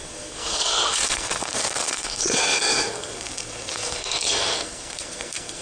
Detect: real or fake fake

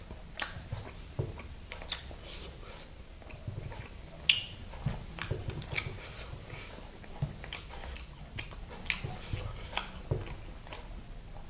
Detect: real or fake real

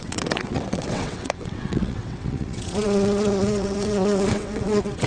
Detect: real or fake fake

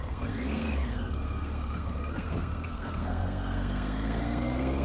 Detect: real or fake fake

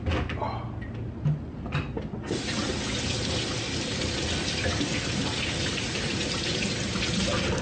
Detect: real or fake real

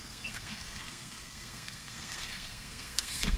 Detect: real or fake fake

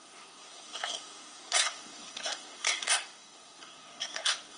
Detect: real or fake fake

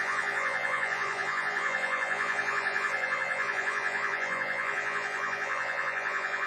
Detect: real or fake fake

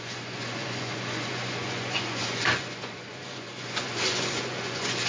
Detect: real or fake fake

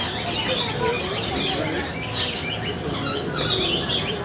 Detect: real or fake real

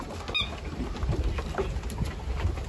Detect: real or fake real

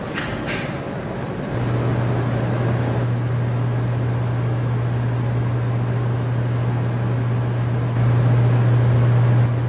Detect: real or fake real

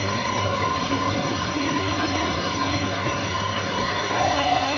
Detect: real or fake fake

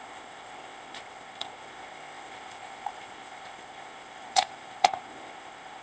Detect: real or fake fake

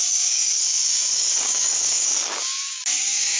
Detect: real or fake fake